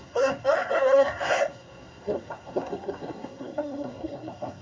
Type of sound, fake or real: fake